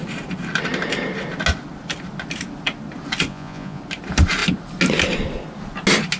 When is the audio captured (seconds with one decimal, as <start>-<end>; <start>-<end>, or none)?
0.0-3.3; 3.8-6.2